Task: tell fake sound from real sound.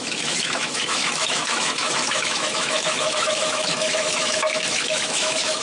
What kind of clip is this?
fake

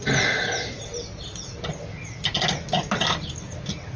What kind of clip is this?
real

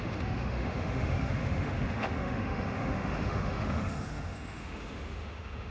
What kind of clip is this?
fake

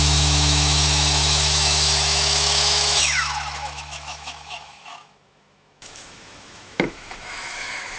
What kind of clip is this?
fake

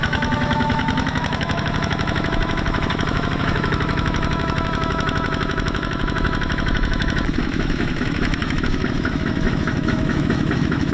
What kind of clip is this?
fake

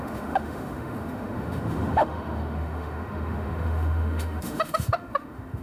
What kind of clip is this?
fake